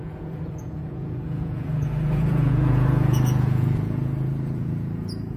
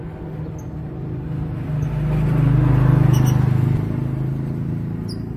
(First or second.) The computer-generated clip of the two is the first